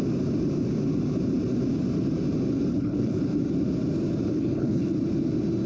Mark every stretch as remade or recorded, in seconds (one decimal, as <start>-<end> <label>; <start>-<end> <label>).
0.0-2.7 recorded; 2.7-3.2 remade; 3.2-4.3 recorded; 4.3-4.9 remade; 4.9-5.7 recorded